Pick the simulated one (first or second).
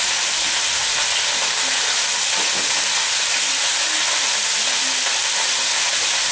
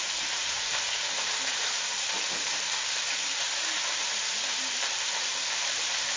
second